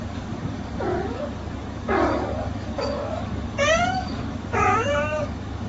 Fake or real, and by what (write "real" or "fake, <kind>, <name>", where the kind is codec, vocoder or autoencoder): fake, codec, DAC